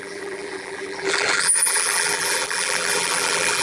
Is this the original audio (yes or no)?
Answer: no